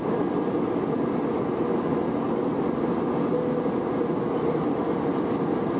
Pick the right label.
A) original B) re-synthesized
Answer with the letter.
A